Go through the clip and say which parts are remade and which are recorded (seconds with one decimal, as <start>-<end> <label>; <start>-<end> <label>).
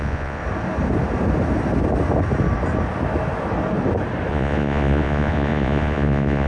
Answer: 0.0-0.4 remade; 0.4-4.3 recorded; 4.3-6.5 remade